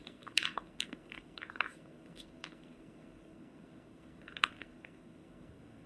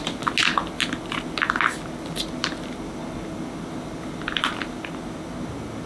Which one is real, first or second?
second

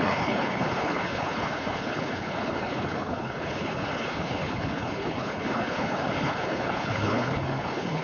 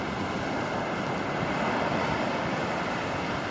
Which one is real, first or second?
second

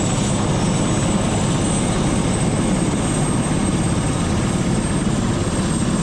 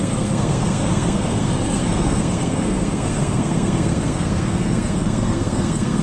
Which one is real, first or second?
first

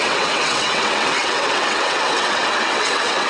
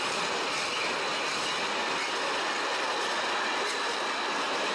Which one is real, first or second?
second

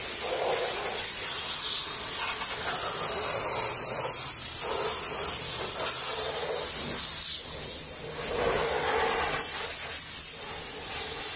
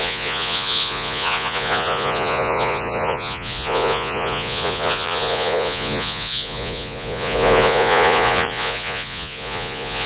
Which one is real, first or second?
first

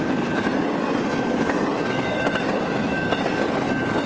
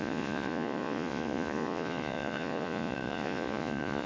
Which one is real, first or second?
first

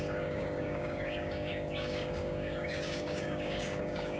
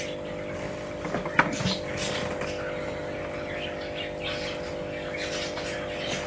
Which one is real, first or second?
second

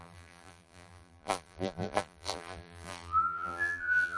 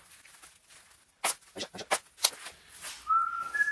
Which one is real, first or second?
second